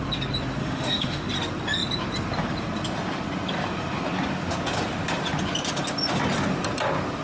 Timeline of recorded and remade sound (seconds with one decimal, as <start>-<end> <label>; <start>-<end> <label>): 0.0-0.6 recorded; 0.6-1.3 remade; 1.3-7.2 recorded